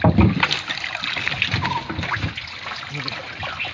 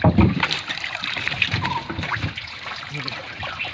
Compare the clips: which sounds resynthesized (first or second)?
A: second